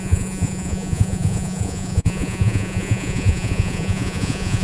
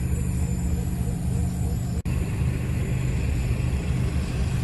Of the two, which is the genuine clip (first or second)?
second